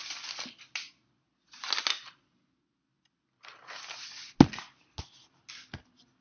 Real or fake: real